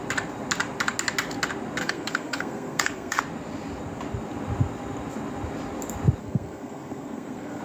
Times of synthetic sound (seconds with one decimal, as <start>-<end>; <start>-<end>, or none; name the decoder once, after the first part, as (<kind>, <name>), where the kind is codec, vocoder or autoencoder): 1.8-3.2 (codec, SNAC); 6.2-7.6